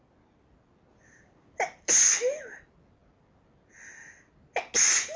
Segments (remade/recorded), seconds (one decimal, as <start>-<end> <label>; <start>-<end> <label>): 0.0-0.9 recorded; 0.9-1.9 remade; 1.9-5.2 recorded